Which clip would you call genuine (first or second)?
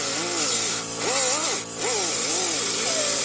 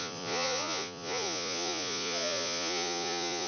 first